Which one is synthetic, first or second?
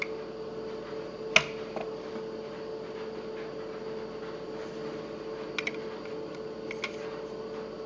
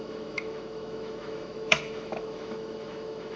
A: second